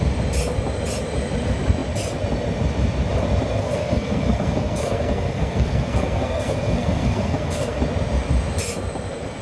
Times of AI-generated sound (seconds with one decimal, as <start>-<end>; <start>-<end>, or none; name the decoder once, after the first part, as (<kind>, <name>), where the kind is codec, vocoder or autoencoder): 3.6-7.8 (codec, SNAC)